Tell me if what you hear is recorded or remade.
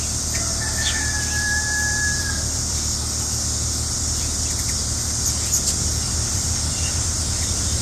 remade